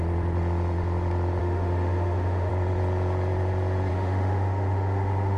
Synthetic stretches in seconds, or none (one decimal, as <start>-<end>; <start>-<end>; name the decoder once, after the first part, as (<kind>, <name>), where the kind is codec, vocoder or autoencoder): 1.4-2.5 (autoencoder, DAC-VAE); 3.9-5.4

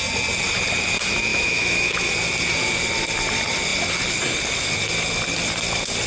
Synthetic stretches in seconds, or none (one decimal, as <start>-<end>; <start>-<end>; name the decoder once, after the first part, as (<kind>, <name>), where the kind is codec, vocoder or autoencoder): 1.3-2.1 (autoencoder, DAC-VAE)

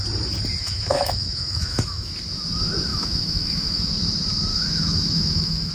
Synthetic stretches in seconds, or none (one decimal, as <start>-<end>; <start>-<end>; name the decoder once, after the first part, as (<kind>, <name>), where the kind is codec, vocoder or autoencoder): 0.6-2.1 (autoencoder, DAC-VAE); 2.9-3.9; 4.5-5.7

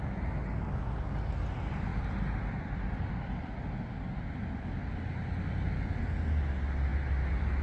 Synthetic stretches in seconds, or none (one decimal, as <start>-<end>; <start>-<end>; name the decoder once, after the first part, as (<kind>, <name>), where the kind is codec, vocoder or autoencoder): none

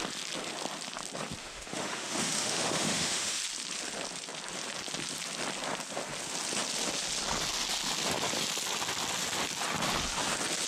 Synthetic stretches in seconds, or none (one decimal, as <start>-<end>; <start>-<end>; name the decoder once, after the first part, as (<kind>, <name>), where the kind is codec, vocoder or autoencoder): 1.4-3.4 (autoencoder, DAC-VAE)